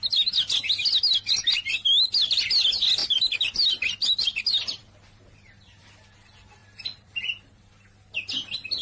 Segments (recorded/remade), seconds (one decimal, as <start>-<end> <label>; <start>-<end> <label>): 0.0-3.0 recorded; 3.0-5.9 remade; 5.9-6.6 recorded; 6.6-7.7 remade; 7.7-8.8 recorded